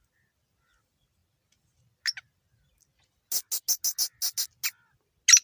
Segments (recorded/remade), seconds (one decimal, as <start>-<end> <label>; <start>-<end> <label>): 0.0-5.4 recorded